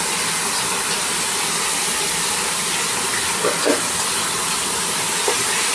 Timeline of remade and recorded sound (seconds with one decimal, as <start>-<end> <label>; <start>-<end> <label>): 0.0-5.7 recorded

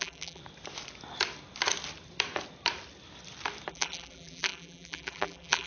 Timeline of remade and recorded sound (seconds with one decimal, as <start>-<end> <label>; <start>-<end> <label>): 0.0-0.4 remade; 0.4-3.7 recorded; 3.7-5.7 remade

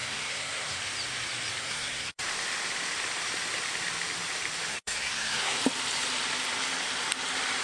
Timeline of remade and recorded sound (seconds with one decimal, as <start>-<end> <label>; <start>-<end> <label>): 0.0-0.8 remade; 0.8-1.6 recorded; 1.6-2.2 remade; 2.2-4.7 recorded; 4.7-5.6 remade; 5.6-7.6 recorded

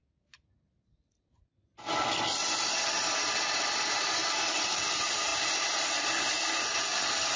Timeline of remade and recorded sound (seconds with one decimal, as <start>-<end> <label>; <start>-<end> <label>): 0.0-2.4 recorded; 2.4-3.8 remade; 3.8-4.2 recorded; 4.2-4.8 remade; 4.8-5.3 recorded; 5.3-5.9 remade; 5.9-7.4 recorded

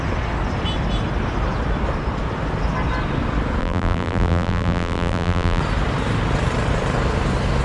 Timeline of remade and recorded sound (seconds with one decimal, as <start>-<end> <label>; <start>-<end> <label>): 0.0-3.6 recorded; 3.6-5.6 remade; 5.6-7.6 recorded

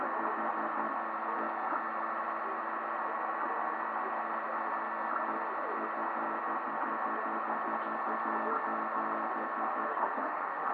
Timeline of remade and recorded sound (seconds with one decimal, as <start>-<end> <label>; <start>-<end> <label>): 0.0-9.9 recorded; 9.9-10.7 remade

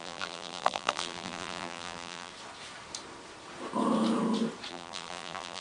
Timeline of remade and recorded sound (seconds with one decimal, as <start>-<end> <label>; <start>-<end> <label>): 0.0-2.3 remade; 2.3-4.7 recorded; 4.7-5.6 remade